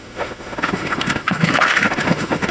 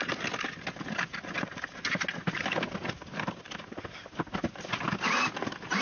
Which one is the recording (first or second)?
second